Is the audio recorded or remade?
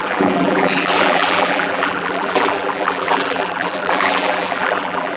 remade